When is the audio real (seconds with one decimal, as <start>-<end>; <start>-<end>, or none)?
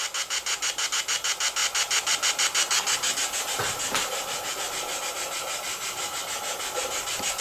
0.0-5.7; 6.2-7.4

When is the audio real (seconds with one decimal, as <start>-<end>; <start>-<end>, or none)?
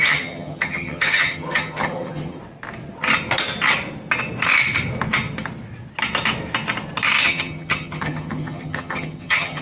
2.4-7.2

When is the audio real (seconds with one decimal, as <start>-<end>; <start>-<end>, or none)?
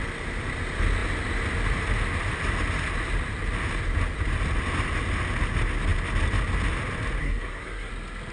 0.0-7.2; 7.9-8.3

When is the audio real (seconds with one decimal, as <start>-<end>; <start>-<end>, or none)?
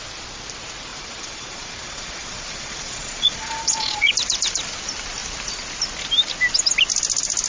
0.0-0.9; 4.1-7.5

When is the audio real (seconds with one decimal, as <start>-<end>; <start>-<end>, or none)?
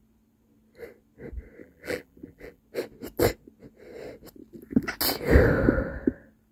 0.0-1.6; 2.6-6.5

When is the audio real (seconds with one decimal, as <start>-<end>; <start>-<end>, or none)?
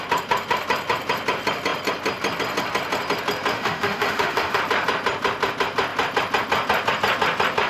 0.0-3.5; 4.6-7.7